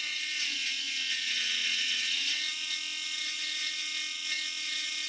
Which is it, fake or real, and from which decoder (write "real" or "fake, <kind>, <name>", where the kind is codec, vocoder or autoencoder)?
fake, vocoder, WaveNeXt